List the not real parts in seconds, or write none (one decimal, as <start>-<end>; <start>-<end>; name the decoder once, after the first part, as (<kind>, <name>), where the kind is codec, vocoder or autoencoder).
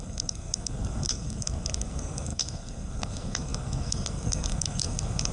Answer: 0.0-5.3 (codec, SNAC)